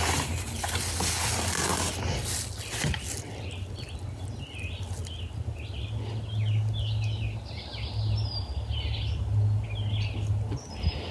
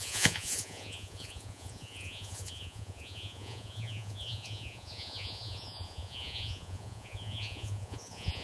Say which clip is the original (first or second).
first